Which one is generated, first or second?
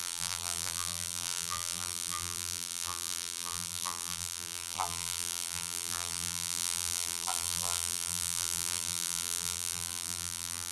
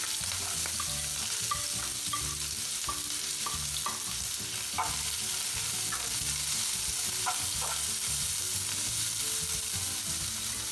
first